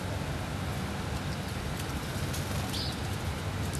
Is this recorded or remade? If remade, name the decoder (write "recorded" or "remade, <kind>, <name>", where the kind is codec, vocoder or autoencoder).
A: recorded